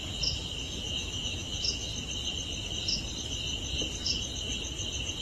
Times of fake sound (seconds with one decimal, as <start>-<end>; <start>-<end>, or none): 0.6-1.9